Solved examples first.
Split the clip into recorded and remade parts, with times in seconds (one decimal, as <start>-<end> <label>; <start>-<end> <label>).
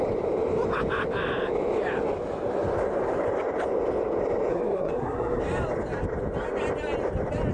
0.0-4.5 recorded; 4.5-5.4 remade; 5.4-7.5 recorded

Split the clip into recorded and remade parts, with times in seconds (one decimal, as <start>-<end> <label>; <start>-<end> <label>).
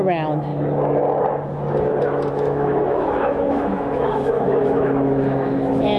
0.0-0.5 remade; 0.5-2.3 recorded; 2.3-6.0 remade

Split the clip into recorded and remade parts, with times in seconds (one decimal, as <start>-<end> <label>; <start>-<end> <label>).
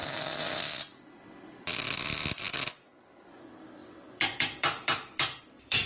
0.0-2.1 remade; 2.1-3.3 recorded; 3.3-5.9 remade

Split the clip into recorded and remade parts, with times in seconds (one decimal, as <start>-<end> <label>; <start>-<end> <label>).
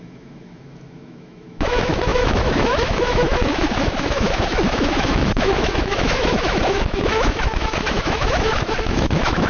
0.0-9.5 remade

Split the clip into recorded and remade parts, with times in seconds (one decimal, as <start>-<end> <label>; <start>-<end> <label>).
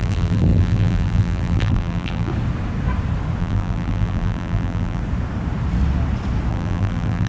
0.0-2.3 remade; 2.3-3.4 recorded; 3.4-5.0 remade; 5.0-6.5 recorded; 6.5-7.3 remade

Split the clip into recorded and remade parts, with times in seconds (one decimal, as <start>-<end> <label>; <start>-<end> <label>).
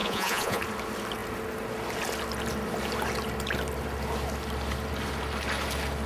0.0-0.6 remade; 0.6-6.1 recorded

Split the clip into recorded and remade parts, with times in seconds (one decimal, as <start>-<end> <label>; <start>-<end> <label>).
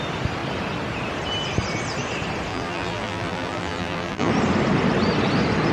0.0-2.5 recorded; 2.5-4.3 remade; 4.3-5.7 recorded